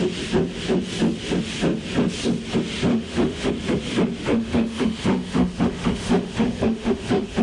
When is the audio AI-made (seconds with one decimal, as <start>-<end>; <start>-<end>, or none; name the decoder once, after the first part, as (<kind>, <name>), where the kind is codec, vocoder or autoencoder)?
2.9-3.5 (autoencoder, DAC-VAE); 4.3-7.4